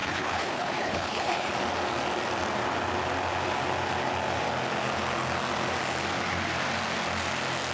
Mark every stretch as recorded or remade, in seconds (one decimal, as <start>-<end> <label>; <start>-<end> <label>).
0.0-1.5 remade; 1.5-7.7 recorded